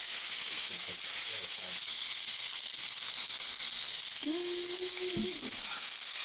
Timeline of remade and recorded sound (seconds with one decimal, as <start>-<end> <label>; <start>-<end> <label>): 0.0-0.9 remade; 0.9-1.5 recorded; 1.5-4.9 remade; 4.9-5.4 recorded; 5.4-6.2 remade

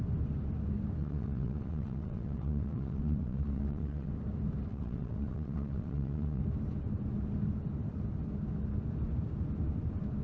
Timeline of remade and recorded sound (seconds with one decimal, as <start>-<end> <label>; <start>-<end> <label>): 0.0-1.0 recorded; 1.0-4.1 remade; 4.1-4.7 recorded; 4.7-6.4 remade; 6.4-10.2 recorded

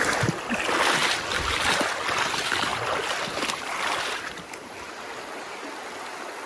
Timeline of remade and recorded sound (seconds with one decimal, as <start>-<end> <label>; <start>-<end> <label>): 0.0-6.5 recorded

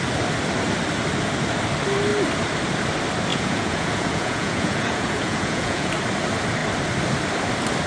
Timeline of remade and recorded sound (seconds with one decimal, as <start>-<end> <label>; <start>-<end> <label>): 0.0-3.3 recorded; 3.3-5.9 remade; 5.9-7.9 recorded

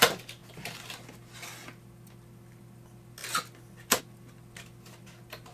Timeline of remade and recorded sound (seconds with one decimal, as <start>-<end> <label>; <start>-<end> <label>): 0.0-5.5 recorded

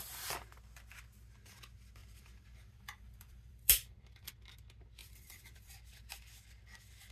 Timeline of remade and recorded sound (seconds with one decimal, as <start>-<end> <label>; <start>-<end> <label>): 0.0-2.0 recorded; 2.0-4.3 remade; 4.3-5.0 recorded; 5.0-5.7 remade; 5.7-7.1 recorded